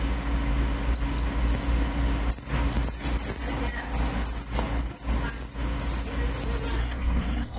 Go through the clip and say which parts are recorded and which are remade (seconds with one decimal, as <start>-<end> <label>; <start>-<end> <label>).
0.0-6.8 recorded; 6.8-7.6 remade